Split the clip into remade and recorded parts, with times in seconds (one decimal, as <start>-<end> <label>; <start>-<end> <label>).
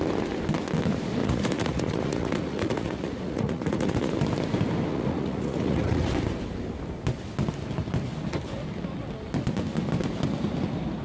0.0-1.2 recorded; 1.2-4.1 remade; 4.1-4.9 recorded; 4.9-6.1 remade; 6.1-11.0 recorded